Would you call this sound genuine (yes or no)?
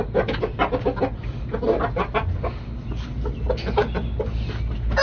yes